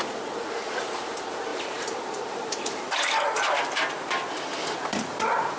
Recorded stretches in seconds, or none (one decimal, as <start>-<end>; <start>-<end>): 0.0-1.5; 2.9-4.6